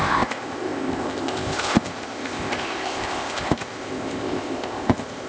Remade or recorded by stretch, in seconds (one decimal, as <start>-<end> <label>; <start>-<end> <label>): 0.0-5.3 remade